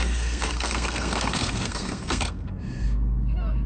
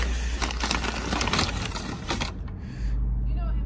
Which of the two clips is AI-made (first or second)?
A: first